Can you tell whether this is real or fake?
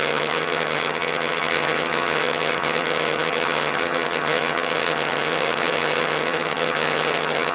fake